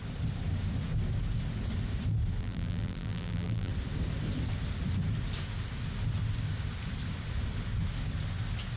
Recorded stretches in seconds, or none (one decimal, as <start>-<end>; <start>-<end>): 0.0-2.4; 3.7-8.8